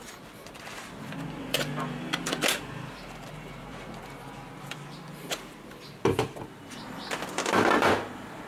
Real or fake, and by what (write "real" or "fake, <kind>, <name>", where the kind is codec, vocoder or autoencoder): fake, vocoder, BigVGAN v2